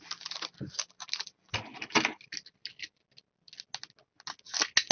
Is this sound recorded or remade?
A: recorded